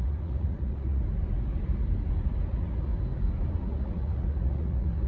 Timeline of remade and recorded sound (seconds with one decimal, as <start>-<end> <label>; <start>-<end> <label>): 0.0-1.0 remade; 1.0-2.5 recorded; 2.5-2.9 remade; 2.9-3.5 recorded; 3.5-5.1 remade